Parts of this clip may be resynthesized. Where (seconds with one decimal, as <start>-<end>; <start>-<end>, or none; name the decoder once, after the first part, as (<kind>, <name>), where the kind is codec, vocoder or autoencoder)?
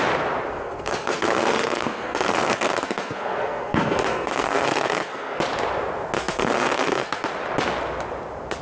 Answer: 0.5-5.4 (codec, SNAC); 6.2-7.3